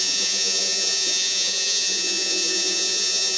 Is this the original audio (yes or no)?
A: no